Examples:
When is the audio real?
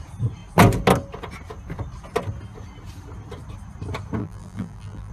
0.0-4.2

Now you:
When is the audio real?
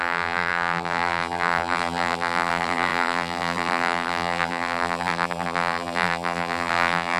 none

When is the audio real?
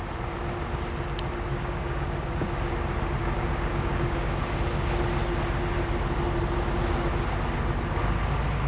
0.0-1.5; 2.7-3.2; 4.6-8.7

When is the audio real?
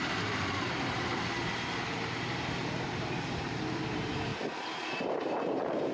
1.1-1.8; 4.3-5.1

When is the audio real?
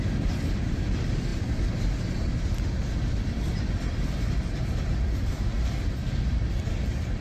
1.3-4.6; 6.0-7.2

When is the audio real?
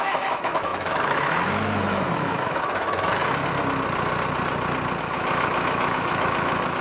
3.2-5.0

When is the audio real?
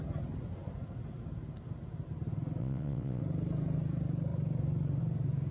0.0-2.6; 3.2-5.5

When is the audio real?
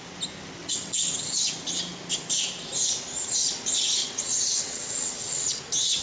0.0-0.6; 1.5-4.0; 5.6-6.0